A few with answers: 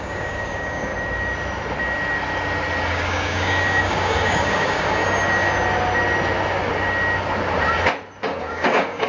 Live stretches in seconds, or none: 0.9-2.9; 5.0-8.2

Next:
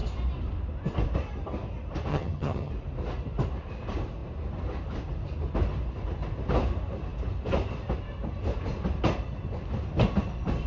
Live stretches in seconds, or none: 0.0-2.1; 2.7-10.7

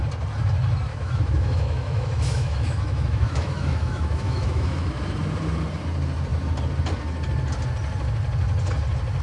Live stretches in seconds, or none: 0.0-0.9; 4.9-9.2